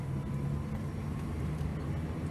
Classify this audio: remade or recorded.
recorded